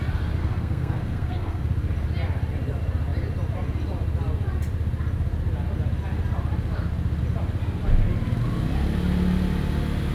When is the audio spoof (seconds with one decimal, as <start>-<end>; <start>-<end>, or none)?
0.4-1.6